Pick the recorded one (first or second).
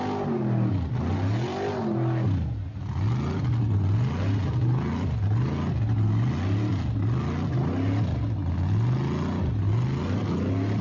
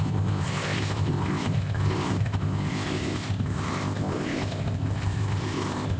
first